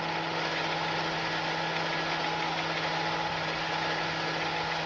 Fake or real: real